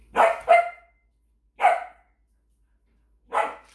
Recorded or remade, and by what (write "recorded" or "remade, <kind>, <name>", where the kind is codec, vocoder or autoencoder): recorded